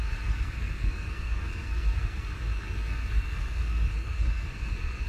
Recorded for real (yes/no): no